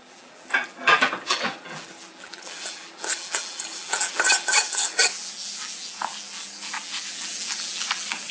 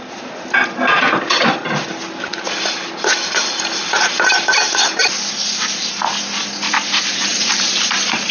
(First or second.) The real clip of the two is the second